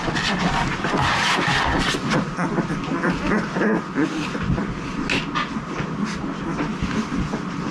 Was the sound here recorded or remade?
recorded